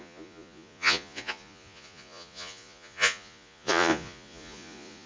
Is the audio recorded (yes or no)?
no